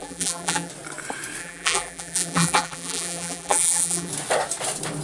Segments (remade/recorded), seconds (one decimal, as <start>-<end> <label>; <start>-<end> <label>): 0.0-0.7 remade; 0.7-1.4 recorded; 1.4-4.1 remade; 4.1-5.0 recorded